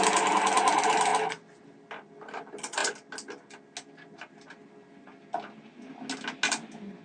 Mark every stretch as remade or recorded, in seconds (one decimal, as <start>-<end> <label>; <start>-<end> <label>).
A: 0.0-7.0 recorded